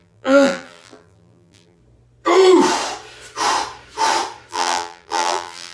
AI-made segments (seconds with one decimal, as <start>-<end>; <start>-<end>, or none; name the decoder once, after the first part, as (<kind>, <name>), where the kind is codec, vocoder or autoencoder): 0.0-1.8 (vocoder, BigVGAN v2); 4.5-5.7